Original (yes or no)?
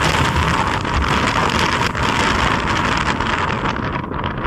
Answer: yes